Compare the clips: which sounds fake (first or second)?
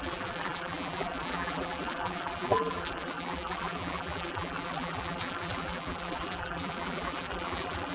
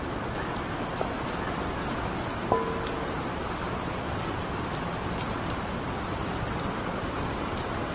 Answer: first